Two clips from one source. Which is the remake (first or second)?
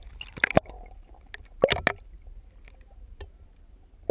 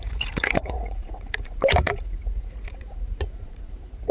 second